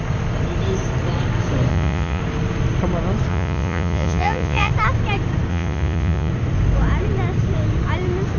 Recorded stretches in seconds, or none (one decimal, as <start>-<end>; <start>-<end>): 0.0-1.7; 2.2-3.3; 4.7-5.5; 6.3-8.4